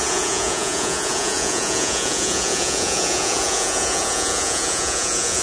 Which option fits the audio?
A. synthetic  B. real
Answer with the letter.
A